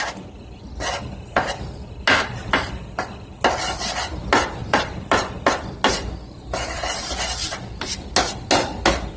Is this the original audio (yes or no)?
yes